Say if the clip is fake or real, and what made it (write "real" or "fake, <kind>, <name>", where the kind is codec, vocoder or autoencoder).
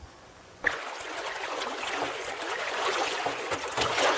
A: fake, vocoder, Vocos